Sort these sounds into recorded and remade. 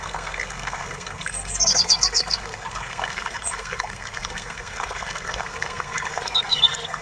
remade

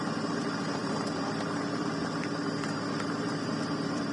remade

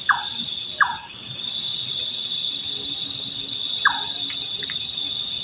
recorded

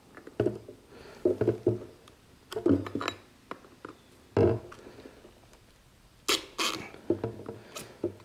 recorded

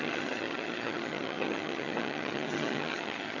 remade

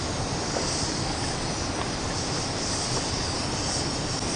recorded